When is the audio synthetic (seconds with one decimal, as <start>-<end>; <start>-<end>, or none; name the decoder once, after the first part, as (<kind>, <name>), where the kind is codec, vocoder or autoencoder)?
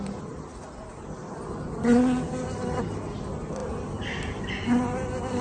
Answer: none